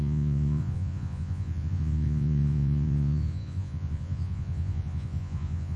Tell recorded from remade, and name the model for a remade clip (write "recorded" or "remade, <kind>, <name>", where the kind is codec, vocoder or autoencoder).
remade, vocoder, Vocos